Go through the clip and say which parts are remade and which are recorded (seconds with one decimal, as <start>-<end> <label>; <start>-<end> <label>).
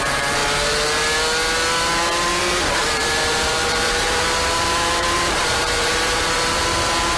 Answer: 0.0-0.4 remade; 0.4-2.4 recorded; 2.4-7.2 remade